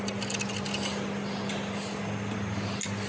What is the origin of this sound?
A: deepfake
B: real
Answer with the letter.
B